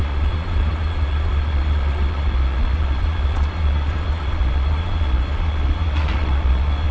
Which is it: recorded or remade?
remade